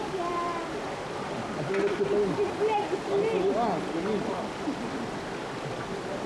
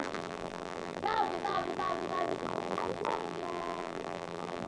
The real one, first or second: first